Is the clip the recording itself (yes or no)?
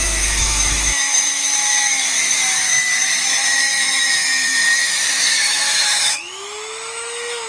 no